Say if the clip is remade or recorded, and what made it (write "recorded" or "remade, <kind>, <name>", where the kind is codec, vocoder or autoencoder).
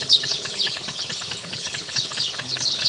remade, codec, HILCodec